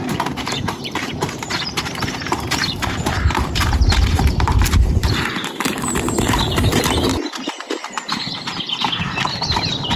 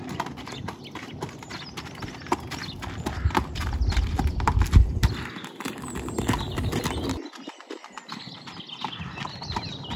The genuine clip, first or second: second